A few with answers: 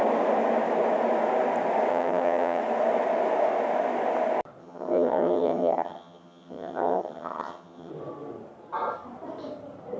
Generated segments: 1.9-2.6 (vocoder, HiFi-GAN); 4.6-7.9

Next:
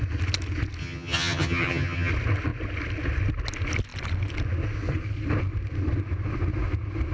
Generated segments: 0.8-2.1 (vocoder, HiFi-GAN)